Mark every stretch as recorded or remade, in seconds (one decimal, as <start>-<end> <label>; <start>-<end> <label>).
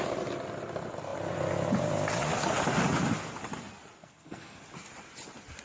0.0-4.0 recorded; 4.0-4.6 remade; 4.6-5.6 recorded